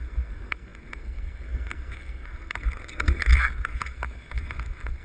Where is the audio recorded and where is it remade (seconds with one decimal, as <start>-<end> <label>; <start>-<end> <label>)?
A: 0.0-5.0 remade